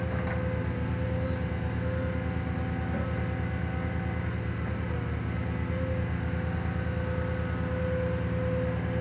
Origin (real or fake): real